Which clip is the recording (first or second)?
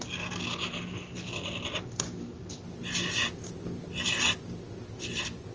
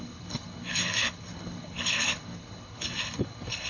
first